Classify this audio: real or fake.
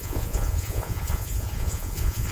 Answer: fake